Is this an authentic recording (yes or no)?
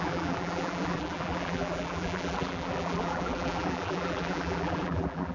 no